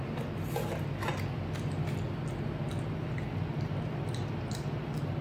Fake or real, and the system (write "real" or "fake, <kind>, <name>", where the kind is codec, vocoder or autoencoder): real